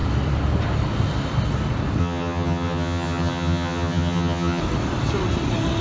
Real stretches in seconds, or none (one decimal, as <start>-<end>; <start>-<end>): 0.0-2.0; 4.6-5.8